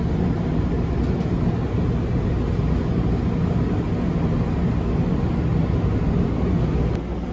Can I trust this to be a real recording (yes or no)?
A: yes